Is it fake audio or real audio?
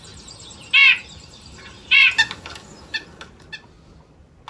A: real